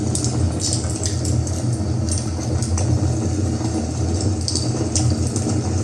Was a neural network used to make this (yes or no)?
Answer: no